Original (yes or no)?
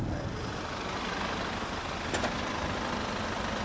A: yes